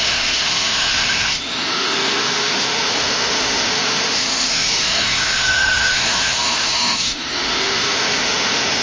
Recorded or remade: remade